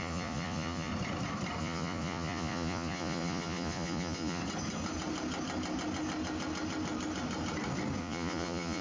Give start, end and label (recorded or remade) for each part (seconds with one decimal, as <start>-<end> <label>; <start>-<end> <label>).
0.0-0.9 remade; 0.9-1.6 recorded; 1.6-4.4 remade; 4.4-8.0 recorded; 8.0-8.8 remade